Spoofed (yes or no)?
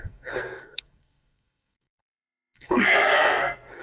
yes